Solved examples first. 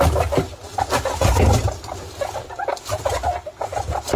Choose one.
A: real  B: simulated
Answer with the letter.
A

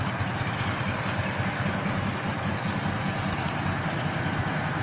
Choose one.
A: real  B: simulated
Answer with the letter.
A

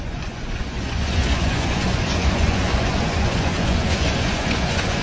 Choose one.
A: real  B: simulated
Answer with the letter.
B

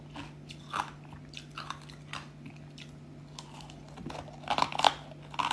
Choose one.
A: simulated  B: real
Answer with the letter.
B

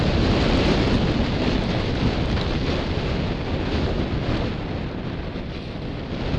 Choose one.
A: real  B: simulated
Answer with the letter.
A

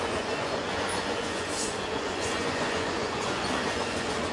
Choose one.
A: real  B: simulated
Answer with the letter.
B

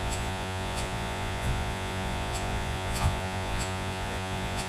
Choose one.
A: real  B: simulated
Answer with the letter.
B